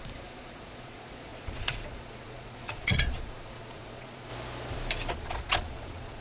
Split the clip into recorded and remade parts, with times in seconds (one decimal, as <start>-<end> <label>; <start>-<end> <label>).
0.0-4.3 remade; 4.3-5.1 recorded; 5.1-6.2 remade